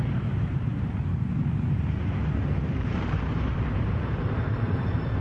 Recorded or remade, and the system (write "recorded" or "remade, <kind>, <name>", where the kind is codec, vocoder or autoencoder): remade, vocoder, BigVGAN v2